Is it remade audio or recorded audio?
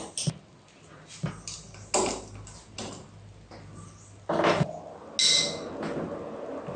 recorded